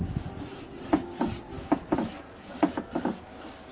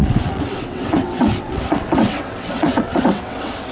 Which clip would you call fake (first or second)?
second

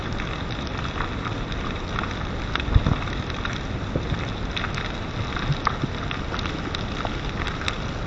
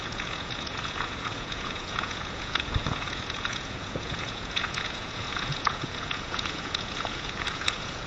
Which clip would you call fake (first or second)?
second